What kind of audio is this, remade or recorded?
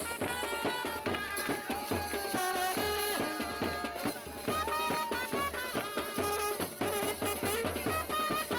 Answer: recorded